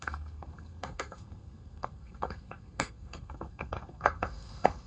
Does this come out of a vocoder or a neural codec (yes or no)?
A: yes